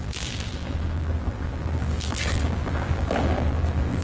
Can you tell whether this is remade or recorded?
remade